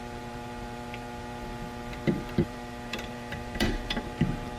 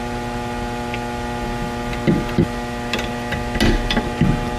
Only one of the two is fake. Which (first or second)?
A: first